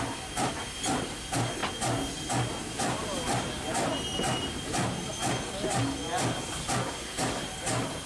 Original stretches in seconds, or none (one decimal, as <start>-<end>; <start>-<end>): 0.0-8.1